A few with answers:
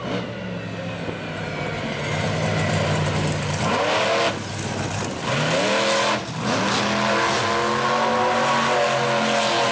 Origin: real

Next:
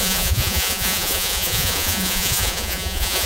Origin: fake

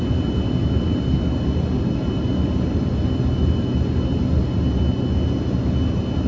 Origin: real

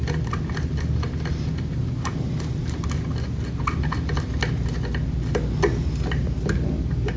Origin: real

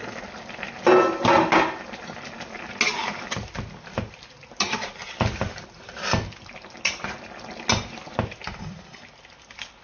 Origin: real